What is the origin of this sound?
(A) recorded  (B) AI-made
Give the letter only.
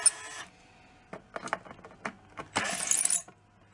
A